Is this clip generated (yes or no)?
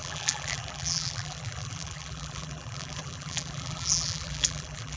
yes